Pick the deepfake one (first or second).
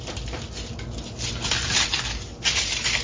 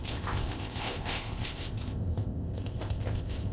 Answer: second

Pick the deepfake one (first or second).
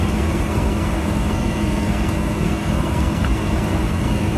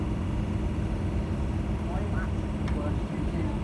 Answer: first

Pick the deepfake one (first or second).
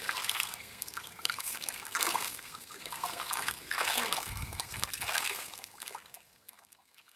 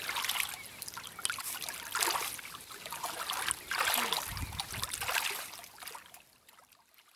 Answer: first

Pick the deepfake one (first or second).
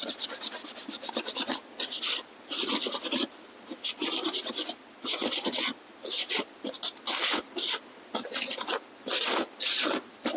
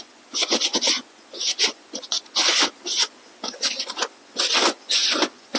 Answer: second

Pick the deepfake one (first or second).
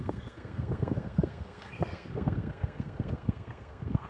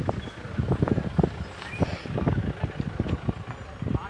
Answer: first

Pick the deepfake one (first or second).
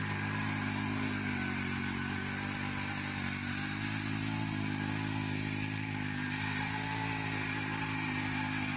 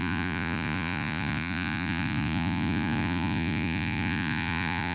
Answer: second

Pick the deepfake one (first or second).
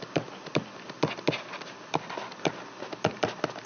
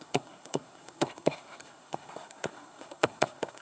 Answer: second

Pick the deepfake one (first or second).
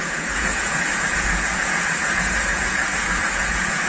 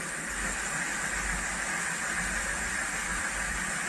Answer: first